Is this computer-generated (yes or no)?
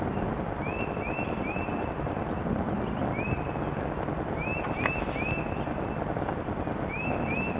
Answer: no